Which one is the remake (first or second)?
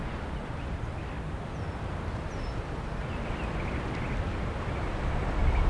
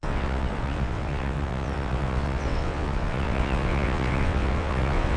second